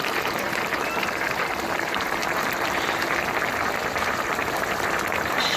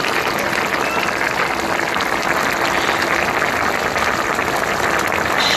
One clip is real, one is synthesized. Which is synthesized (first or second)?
first